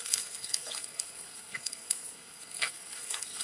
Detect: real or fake fake